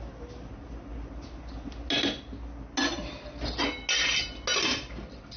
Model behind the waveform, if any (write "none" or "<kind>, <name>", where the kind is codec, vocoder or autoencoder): none